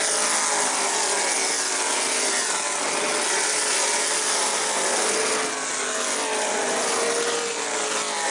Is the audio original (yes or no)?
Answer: yes